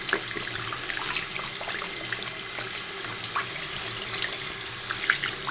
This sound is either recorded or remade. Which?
recorded